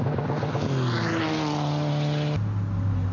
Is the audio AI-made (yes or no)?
no